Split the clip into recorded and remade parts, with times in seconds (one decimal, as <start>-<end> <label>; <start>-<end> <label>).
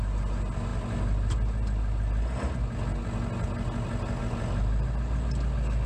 0.0-5.9 recorded